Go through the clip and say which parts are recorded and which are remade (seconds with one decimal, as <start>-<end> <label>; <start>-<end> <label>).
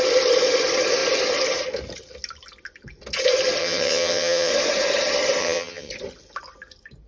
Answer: 0.0-3.6 recorded; 3.6-4.5 remade; 4.5-5.4 recorded; 5.4-5.9 remade; 5.9-7.1 recorded